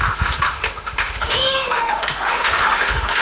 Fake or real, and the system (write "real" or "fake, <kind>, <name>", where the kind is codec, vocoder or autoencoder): fake, autoencoder, DAC-VAE